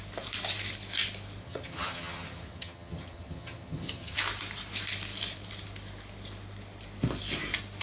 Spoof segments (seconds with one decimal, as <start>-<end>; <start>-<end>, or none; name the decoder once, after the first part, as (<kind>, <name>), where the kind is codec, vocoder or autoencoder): 1.4-4.2 (vocoder, HiFi-GAN)